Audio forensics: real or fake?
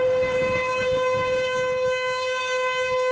fake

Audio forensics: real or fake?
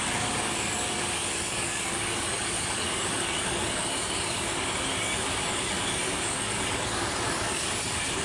fake